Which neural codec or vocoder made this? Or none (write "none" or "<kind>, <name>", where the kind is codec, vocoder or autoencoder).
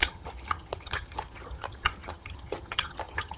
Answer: vocoder, HiFi-GAN